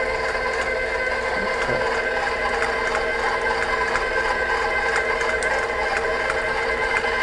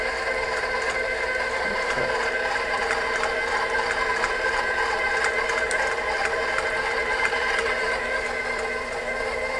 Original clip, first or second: first